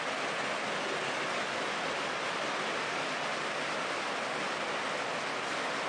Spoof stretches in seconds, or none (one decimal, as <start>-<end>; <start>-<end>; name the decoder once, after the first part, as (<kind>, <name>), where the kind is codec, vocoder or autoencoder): none